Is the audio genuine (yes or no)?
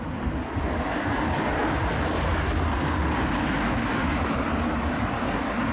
yes